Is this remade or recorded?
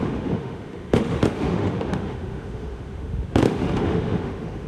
remade